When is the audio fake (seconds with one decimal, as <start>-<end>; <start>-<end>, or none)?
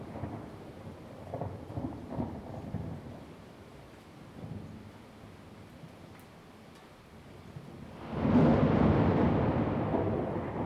0.0-3.7; 8.8-10.7